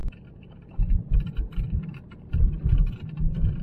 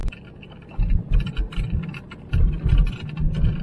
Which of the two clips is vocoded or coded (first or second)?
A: first